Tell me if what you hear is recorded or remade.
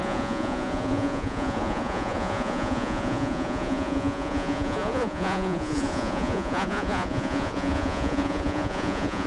remade